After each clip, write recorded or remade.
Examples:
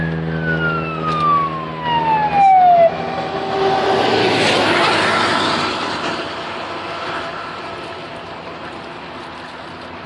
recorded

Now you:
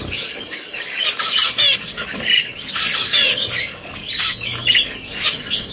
remade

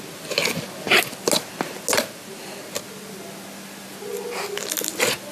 recorded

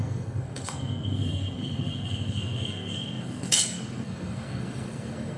remade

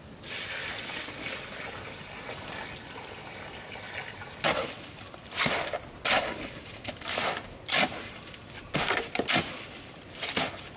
recorded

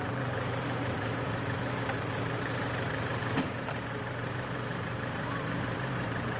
remade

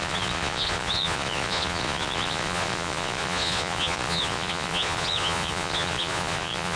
remade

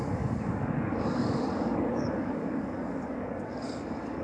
remade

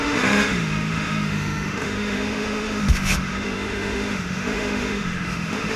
remade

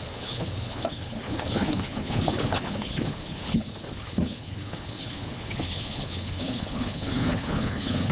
remade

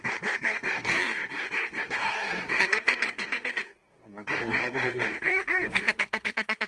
remade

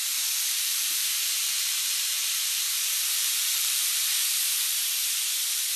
remade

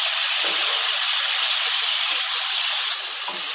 recorded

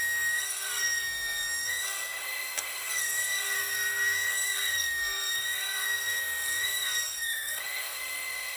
remade